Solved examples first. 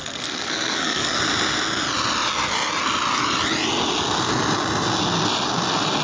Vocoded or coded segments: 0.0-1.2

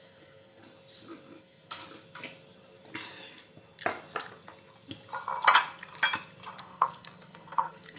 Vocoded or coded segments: 0.0-0.6; 1.4-1.8; 6.6-8.0

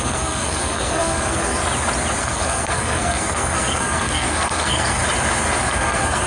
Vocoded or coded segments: 0.0-1.6; 2.2-5.0; 5.7-6.3

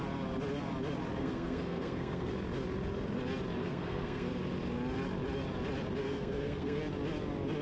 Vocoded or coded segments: 1.2-2.3; 3.6-4.3; 6.0-6.8

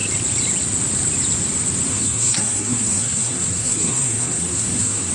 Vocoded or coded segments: 1.9-5.1